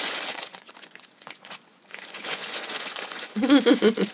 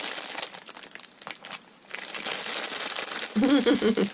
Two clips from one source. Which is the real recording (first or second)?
second